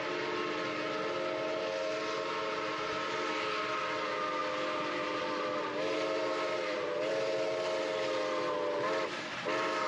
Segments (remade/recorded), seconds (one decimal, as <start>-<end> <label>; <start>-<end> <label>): 0.0-9.9 recorded